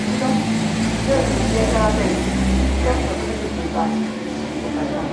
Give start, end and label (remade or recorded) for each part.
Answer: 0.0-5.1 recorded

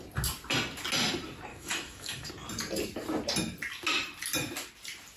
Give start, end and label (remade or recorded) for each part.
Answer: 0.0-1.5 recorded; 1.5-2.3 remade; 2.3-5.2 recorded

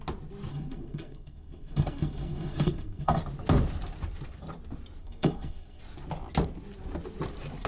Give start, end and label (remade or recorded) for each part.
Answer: 0.0-0.5 recorded; 0.5-3.2 remade; 3.2-5.0 recorded; 5.0-5.8 remade; 5.8-7.7 recorded

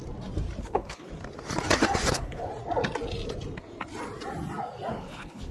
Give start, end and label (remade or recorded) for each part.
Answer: 0.0-0.6 recorded; 0.6-1.1 remade; 1.1-2.1 recorded; 2.1-2.5 remade; 2.5-4.9 recorded; 4.9-5.5 remade

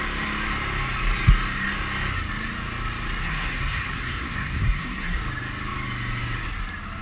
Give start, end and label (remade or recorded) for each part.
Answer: 0.0-3.2 recorded; 3.2-5.2 remade; 5.2-7.0 recorded